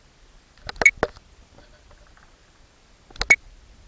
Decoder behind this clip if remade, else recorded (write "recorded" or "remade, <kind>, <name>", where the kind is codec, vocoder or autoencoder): recorded